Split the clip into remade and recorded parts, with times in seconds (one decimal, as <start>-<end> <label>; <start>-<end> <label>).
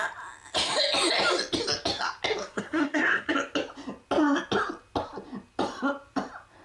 0.0-2.4 recorded; 2.4-3.3 remade; 3.3-6.6 recorded